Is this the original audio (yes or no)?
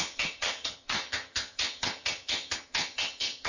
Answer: no